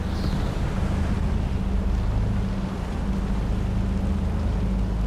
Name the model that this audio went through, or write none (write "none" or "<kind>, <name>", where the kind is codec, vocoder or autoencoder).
none